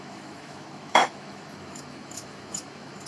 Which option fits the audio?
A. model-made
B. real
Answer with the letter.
A